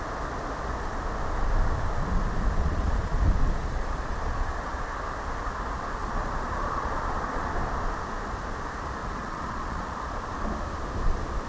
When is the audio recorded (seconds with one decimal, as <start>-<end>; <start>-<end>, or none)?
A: 0.0-2.6; 4.7-6.0; 7.5-9.0; 10.2-11.5